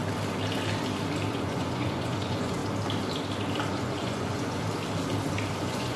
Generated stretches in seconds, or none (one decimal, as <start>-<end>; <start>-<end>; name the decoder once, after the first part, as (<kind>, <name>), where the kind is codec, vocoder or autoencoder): 1.3-2.6 (vocoder, Vocos); 3.7-4.6; 5.6-6.0